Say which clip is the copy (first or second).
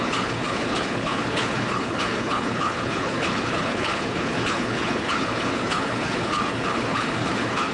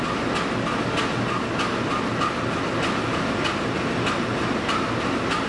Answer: first